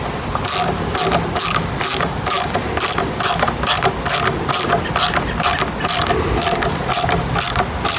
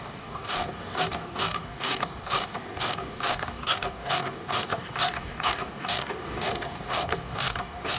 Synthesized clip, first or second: second